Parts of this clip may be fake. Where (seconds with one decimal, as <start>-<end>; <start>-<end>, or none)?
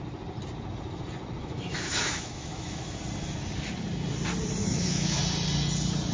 1.4-3.0; 4.6-5.2